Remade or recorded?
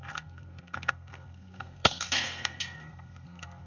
remade